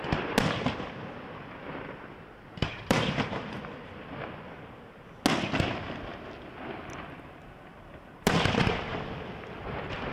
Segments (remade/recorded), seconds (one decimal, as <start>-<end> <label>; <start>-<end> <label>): 0.0-2.7 recorded; 2.7-3.6 remade; 3.6-10.1 recorded